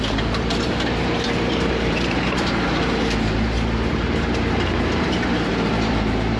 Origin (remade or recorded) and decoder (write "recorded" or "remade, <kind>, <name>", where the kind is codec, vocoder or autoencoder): remade, vocoder, BigVGAN v2